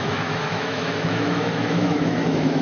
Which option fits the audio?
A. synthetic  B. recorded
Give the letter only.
A